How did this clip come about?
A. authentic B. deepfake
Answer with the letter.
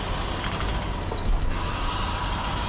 A